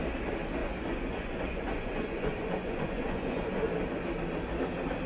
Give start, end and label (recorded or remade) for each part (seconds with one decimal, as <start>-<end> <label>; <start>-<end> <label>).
0.0-0.6 recorded; 0.6-3.7 remade; 3.7-5.1 recorded